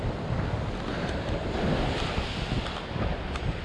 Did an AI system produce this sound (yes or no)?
no